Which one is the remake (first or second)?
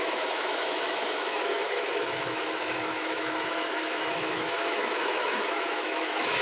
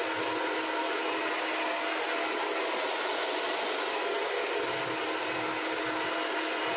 first